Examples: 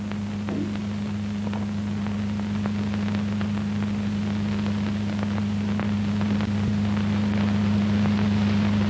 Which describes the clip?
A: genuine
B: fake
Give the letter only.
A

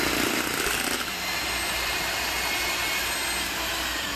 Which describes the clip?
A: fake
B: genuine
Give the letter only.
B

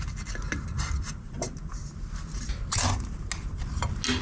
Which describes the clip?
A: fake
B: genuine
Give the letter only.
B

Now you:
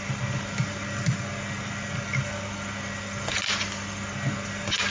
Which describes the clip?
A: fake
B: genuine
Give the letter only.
B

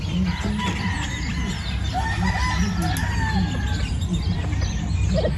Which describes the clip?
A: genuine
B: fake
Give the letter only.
A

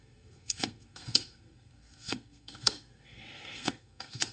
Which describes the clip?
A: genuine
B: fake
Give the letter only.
B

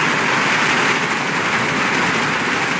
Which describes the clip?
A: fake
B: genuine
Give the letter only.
B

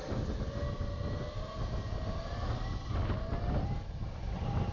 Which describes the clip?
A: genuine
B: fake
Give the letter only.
A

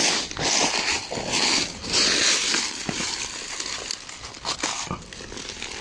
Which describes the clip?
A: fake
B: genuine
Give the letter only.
B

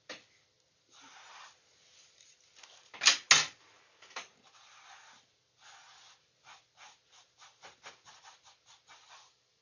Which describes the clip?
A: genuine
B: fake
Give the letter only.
A